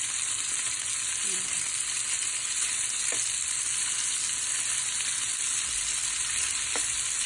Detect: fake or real real